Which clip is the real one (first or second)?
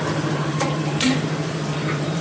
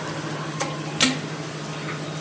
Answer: second